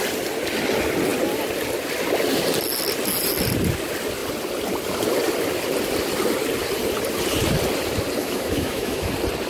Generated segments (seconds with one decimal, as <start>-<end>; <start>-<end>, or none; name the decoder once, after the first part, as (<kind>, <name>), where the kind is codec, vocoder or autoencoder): 8.2-9.1 (autoencoder, DAC-VAE)